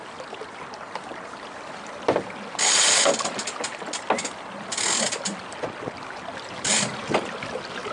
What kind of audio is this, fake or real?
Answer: real